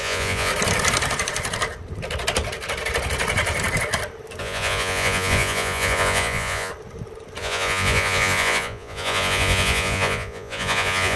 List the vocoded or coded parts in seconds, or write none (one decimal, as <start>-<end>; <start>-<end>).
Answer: 0.0-0.5; 4.4-6.7; 7.4-11.2